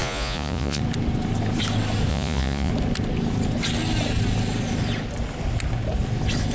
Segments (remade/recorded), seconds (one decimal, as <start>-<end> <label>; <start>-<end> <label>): 0.0-0.8 remade; 0.8-2.1 recorded; 2.1-2.7 remade; 2.7-6.5 recorded